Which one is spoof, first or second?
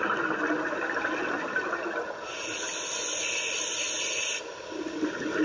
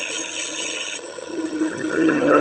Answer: second